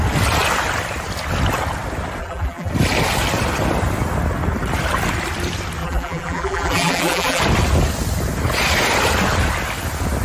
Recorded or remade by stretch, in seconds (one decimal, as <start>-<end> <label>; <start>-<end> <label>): 0.0-2.2 recorded; 2.2-2.7 remade; 2.7-5.8 recorded; 5.8-7.4 remade; 7.4-10.2 recorded